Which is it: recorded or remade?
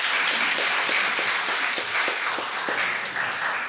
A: recorded